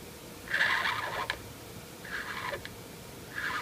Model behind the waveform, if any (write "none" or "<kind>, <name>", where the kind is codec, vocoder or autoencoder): none